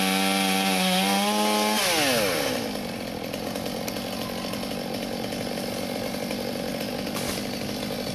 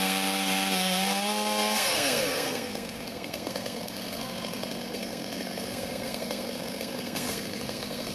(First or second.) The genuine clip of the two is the first